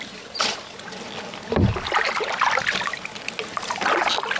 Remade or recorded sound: recorded